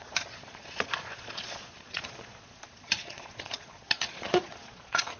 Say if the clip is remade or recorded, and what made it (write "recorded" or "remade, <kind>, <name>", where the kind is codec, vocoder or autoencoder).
remade, vocoder, Vocos